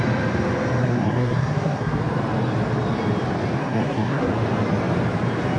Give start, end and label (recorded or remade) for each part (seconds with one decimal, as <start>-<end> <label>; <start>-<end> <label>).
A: 0.0-0.8 recorded; 0.8-2.0 remade; 2.0-3.6 recorded; 3.6-4.3 remade; 4.3-5.6 recorded